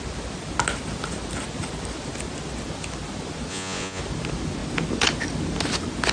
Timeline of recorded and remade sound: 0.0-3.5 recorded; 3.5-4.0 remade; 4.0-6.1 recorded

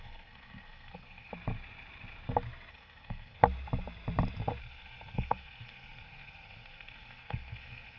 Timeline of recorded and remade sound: 0.0-1.3 remade; 1.3-2.7 recorded; 2.7-3.4 remade; 3.4-4.6 recorded; 4.6-8.0 remade

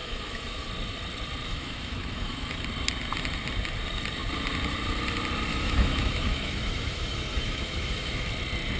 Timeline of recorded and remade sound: 0.0-0.7 remade; 0.7-1.5 recorded; 1.5-2.6 remade; 2.6-5.5 recorded; 5.5-8.3 remade; 8.3-8.8 recorded

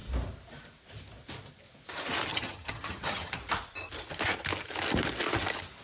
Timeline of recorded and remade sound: 0.0-2.3 recorded; 2.3-3.4 remade; 3.4-5.8 recorded